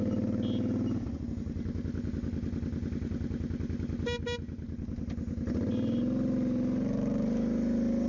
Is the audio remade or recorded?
recorded